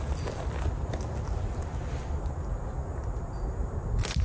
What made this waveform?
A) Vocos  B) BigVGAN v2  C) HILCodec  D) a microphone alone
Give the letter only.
D